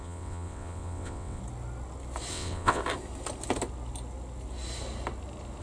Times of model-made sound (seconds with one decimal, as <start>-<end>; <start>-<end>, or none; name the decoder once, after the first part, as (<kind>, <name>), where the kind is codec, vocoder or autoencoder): 0.0-1.4 (vocoder, WaveNeXt); 2.3-2.8